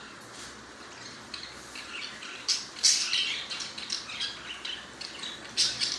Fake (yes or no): no